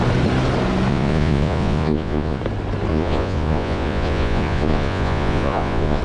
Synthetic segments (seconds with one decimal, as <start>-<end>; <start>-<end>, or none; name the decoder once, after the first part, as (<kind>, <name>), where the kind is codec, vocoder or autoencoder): 0.9-2.4 (vocoder, Vocos); 2.9-6.0